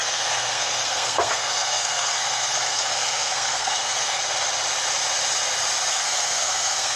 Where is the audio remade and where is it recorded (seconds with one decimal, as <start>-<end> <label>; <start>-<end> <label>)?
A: 0.0-4.2 remade; 4.2-5.9 recorded; 5.9-7.0 remade